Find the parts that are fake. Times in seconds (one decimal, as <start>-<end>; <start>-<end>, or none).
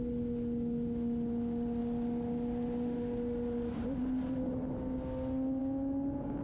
none